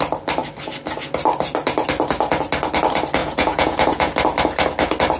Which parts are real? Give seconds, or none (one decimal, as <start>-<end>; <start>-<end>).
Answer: 0.0-3.2; 4.1-5.2